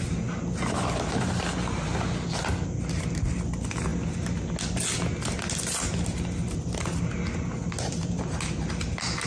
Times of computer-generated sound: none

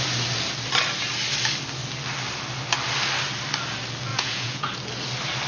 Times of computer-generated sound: 4.1-4.7

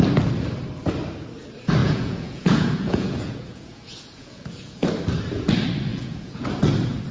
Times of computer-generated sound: 1.8-4.9; 5.9-6.5

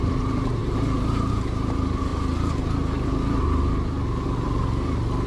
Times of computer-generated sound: 0.0-2.1

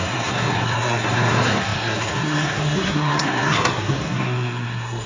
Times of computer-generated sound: 0.0-5.1

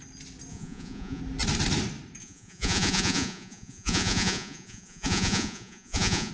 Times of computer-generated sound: 0.5-1.2; 2.2-6.3

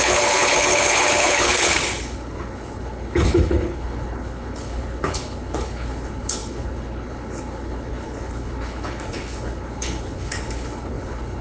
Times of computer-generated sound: 0.0-11.4